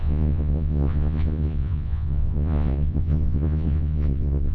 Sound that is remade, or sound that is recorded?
remade